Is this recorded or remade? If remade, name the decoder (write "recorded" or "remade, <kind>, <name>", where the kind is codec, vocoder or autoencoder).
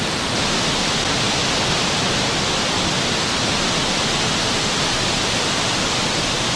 recorded